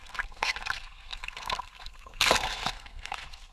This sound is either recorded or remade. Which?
remade